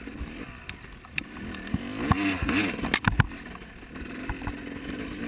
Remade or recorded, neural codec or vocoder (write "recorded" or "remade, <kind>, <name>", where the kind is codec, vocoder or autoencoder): recorded